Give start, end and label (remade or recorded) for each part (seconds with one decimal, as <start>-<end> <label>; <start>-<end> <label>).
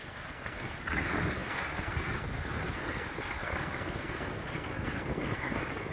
0.0-5.9 remade